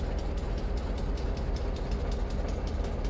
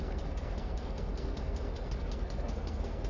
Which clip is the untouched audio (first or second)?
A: first